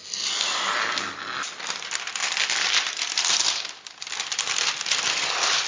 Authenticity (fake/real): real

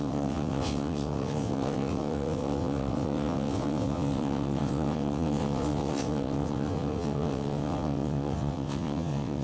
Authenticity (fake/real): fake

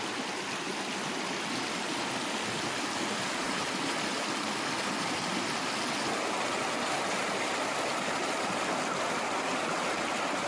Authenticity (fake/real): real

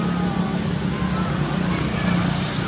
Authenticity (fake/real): real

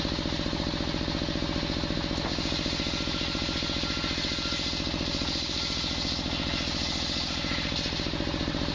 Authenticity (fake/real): real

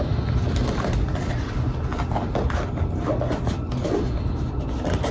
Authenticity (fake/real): real